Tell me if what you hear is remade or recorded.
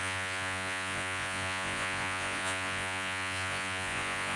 remade